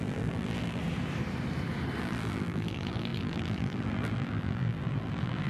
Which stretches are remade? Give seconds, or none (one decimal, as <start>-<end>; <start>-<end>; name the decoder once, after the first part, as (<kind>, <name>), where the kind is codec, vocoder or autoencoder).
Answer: 0.0-0.8 (vocoder, BigVGAN v2); 2.0-5.5